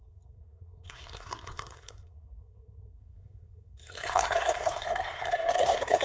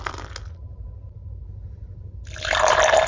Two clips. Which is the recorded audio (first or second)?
second